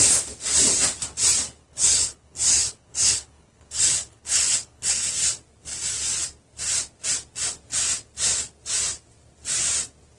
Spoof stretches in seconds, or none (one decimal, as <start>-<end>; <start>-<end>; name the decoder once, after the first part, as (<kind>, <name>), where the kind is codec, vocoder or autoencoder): 1.6-5.1 (codec, HILCodec)